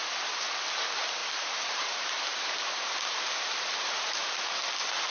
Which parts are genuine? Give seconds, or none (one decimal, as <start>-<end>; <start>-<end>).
0.0-1.2; 4.3-5.1